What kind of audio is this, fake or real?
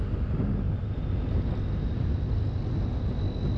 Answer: real